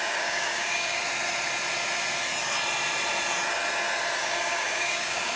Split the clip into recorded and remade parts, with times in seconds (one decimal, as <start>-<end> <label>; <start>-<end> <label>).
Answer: 0.0-1.0 remade; 1.0-4.2 recorded; 4.2-5.4 remade